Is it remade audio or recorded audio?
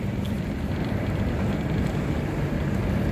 recorded